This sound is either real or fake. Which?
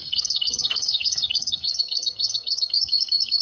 fake